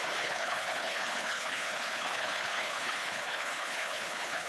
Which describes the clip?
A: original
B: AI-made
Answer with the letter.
B